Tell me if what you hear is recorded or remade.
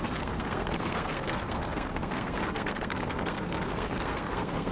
remade